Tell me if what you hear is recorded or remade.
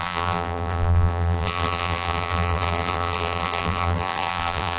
remade